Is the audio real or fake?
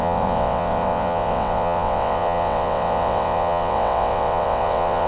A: fake